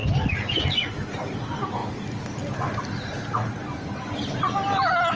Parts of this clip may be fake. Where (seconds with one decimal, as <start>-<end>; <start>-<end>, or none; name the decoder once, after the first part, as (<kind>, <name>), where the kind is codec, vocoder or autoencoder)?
none